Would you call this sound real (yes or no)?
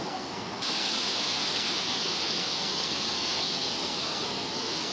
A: no